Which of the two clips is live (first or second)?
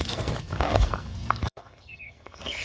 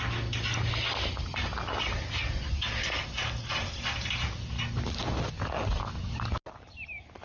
second